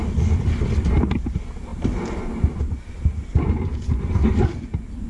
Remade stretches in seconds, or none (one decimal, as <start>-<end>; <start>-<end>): none